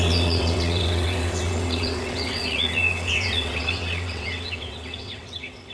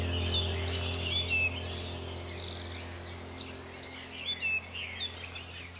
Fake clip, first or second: first